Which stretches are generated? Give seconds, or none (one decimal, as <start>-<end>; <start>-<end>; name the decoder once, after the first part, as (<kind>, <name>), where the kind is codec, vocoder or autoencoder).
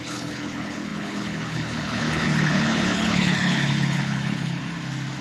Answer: 0.0-4.6 (codec, HILCodec)